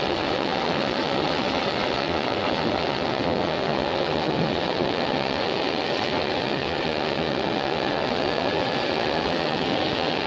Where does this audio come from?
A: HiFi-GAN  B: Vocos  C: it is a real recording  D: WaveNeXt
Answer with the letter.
D